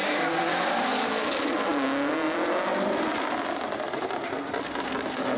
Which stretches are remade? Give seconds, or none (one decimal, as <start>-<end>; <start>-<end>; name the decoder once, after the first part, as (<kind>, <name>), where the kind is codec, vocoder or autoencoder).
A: 0.0-1.1 (codec, DAC)